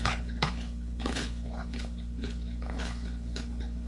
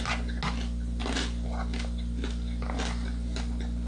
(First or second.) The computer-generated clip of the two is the first